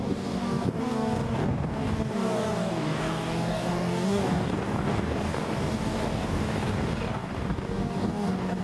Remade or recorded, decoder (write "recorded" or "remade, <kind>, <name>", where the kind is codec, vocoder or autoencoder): remade, codec, DAC